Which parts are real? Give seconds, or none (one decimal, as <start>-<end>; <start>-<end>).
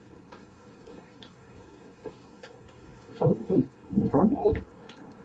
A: none